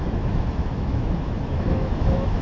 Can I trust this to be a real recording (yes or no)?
no